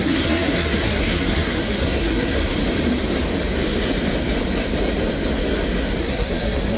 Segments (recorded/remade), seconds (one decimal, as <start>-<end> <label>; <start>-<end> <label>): 0.0-2.5 remade; 2.5-6.0 recorded; 6.0-6.8 remade